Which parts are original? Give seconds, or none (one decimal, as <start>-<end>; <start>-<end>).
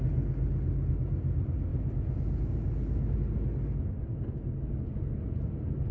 0.0-5.9